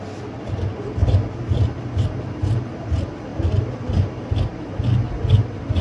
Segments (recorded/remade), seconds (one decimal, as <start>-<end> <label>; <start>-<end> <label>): 0.0-5.8 recorded